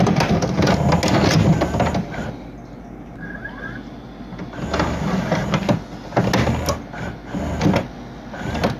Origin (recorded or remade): recorded